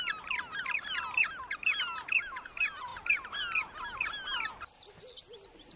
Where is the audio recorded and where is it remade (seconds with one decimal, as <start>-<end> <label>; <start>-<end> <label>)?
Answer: 0.0-5.8 recorded